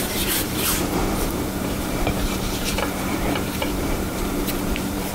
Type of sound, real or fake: fake